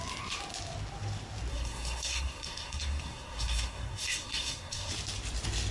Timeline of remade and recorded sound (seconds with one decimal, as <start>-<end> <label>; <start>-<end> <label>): 0.0-1.5 recorded; 1.5-4.9 remade; 4.9-5.7 recorded